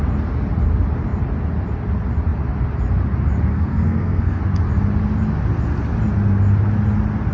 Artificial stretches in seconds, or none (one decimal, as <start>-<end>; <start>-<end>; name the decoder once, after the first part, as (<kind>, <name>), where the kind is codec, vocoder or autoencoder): 3.5-4.4 (codec, SNAC)